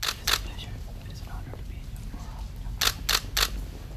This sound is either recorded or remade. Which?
recorded